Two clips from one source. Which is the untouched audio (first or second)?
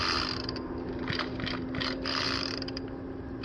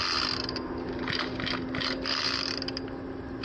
second